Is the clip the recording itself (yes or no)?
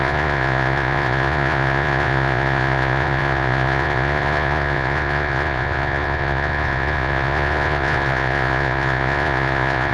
no